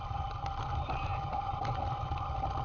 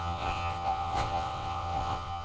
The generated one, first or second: second